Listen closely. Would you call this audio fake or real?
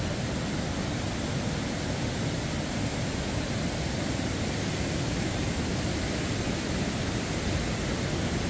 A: real